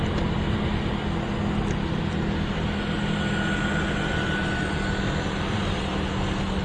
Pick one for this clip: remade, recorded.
recorded